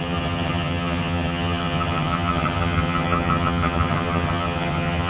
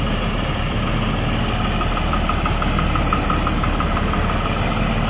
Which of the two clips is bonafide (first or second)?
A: second